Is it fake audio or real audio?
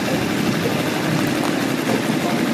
real